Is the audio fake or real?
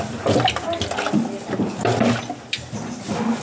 real